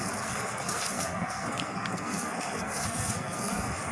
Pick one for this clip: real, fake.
fake